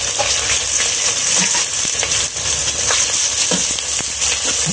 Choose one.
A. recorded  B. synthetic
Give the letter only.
B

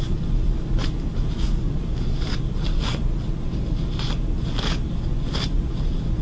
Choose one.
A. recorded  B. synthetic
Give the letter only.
A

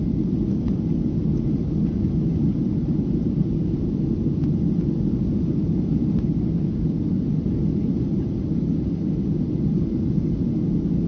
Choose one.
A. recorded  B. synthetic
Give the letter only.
A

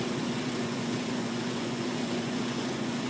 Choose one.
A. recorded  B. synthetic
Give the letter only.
B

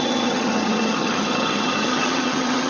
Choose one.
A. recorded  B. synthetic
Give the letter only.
B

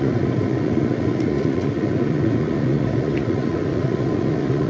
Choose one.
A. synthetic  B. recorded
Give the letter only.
A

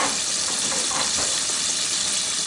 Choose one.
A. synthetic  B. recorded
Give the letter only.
B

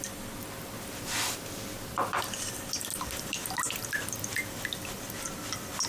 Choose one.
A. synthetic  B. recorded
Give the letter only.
B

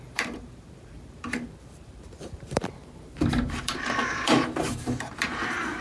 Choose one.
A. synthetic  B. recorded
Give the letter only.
A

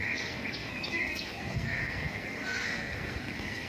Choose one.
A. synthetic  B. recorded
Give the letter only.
A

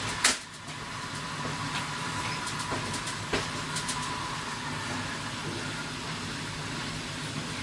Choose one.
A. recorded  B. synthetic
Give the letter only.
A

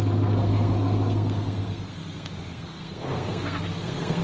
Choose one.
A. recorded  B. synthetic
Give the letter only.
B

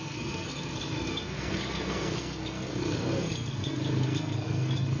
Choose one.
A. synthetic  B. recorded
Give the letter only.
A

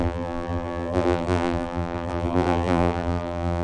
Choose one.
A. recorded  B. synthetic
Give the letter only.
B